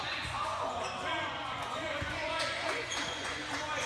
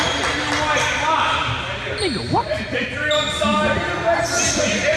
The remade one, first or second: first